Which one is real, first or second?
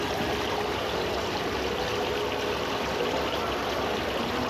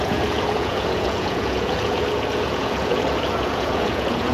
first